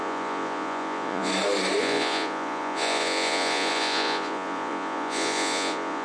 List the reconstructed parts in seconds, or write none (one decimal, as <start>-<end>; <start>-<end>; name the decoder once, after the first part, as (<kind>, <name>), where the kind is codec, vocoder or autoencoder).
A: 0.0-1.3 (vocoder, Vocos); 1.8-6.0